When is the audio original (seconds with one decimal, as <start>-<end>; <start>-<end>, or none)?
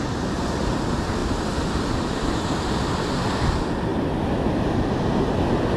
0.0-1.2; 3.5-3.9; 5.3-5.8